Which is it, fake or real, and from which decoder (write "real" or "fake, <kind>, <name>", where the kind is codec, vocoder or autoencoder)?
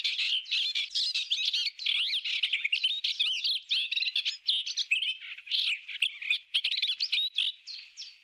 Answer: real